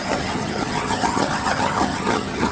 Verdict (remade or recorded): remade